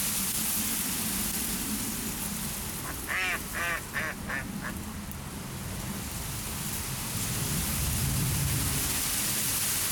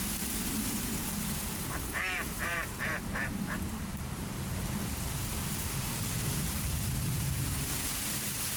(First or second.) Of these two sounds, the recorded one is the first